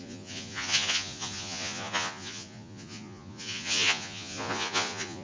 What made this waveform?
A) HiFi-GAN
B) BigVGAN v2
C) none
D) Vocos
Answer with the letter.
D